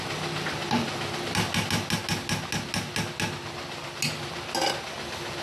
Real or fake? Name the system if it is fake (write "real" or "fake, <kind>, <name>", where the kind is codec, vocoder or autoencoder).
real